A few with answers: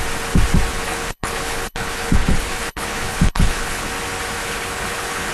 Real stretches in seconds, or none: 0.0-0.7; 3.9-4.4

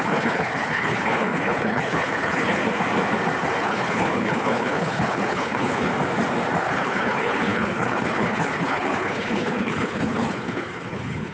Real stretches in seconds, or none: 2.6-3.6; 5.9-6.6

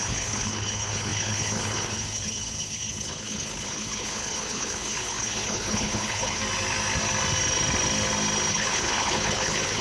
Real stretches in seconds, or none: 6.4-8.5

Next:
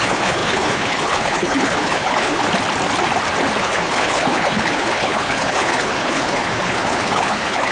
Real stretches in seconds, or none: 2.4-3.6

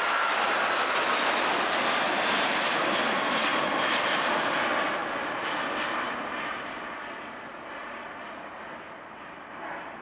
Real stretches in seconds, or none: 0.0-10.0

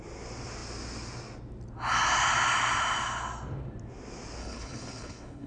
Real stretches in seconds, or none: 0.0-4.4

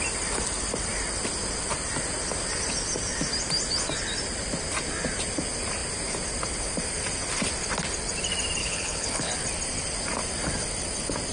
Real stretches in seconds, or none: 0.0-8.6; 9.3-11.3

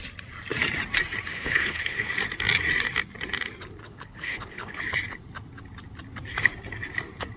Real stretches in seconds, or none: 0.0-1.3; 2.1-3.8; 4.8-7.4